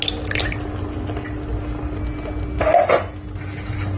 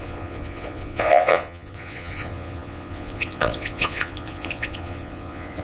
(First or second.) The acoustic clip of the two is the first